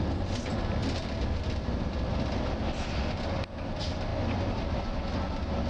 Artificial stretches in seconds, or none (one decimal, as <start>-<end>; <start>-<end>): none